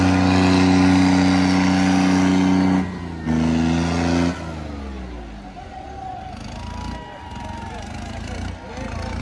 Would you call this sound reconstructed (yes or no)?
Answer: no